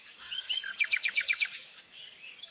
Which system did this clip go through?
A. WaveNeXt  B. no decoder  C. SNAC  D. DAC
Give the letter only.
D